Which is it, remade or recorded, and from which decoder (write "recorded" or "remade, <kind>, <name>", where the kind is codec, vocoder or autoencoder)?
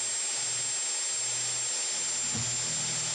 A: recorded